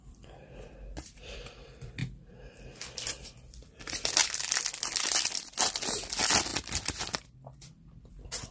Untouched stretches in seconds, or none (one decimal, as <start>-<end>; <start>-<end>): 2.0-2.5; 4.2-4.8; 6.5-8.1